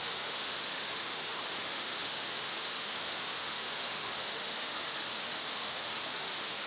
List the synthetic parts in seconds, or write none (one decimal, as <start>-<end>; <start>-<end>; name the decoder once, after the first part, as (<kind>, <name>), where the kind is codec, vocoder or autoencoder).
0.0-6.7 (autoencoder, DAC-VAE)